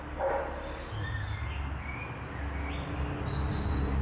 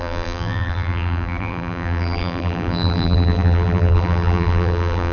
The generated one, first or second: second